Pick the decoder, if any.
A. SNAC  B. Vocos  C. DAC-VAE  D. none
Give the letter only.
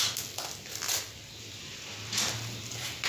D